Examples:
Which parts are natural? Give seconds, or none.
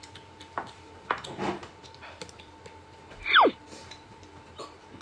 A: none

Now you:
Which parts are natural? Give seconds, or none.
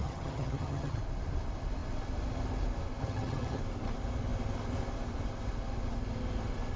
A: 1.0-3.0; 3.6-6.8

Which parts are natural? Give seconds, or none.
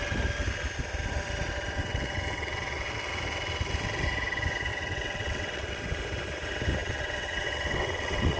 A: 0.0-1.8; 2.9-4.7; 5.8-6.8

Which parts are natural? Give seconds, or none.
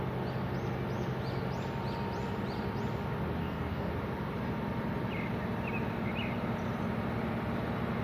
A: 0.0-3.4; 3.9-8.0